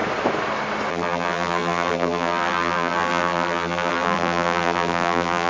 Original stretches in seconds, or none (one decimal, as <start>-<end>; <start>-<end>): 0.0-0.9